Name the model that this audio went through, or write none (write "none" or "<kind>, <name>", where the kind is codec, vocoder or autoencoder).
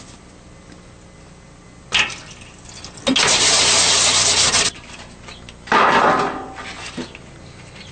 none